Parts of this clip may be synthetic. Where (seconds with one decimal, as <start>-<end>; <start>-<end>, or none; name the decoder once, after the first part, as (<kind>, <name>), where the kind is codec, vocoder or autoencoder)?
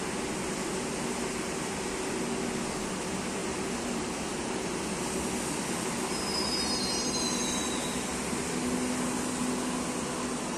3.4-5.1 (vocoder, BigVGAN v2)